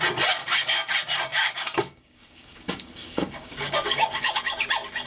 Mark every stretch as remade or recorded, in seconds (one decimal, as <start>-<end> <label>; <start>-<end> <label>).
0.0-0.4 recorded; 0.4-0.9 remade; 0.9-1.3 recorded; 1.3-4.4 remade; 4.4-5.1 recorded